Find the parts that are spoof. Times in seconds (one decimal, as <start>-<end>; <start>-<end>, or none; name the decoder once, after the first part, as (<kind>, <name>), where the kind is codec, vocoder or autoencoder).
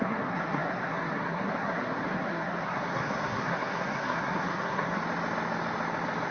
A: 0.0-5.0 (codec, SNAC)